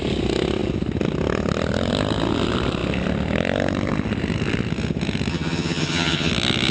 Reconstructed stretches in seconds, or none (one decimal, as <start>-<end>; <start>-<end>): 5.3-6.3